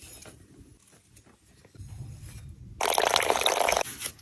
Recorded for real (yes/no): yes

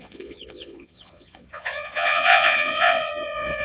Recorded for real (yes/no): no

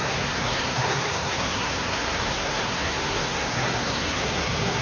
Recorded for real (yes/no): no